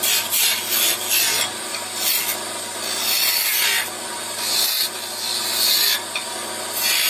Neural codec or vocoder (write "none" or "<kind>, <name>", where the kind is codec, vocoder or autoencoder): none